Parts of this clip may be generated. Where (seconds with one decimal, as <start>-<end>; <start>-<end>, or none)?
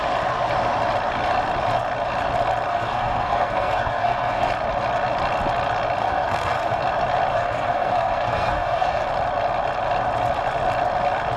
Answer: 2.7-4.5; 6.0-6.8; 7.3-9.1